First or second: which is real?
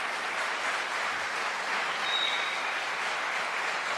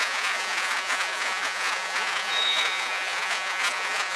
first